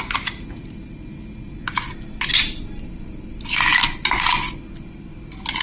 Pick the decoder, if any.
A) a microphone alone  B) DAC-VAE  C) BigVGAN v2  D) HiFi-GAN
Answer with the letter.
A